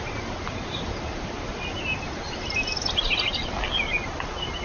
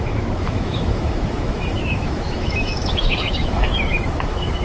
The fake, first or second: second